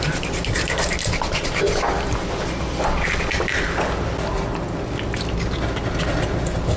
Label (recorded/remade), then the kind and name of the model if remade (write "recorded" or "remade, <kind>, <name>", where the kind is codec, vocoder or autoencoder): recorded